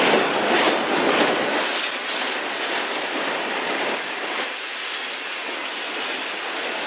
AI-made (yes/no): no